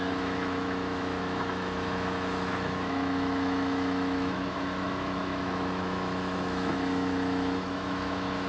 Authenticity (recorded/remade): remade